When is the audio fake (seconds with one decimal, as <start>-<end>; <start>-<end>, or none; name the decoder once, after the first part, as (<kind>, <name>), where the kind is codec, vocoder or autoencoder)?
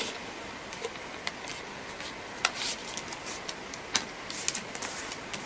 none